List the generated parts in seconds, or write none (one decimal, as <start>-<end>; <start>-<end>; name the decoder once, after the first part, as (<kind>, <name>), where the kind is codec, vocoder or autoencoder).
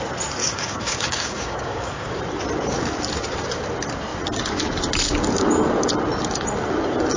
0.4-2.2 (codec, DAC)